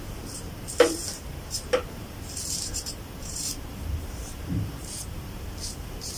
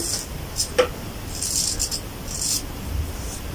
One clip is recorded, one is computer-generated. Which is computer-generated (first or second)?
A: first